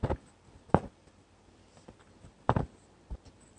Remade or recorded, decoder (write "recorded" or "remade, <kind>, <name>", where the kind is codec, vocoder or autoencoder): recorded